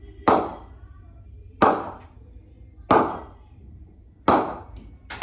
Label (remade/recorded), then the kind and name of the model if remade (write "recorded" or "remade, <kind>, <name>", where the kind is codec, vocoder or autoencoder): recorded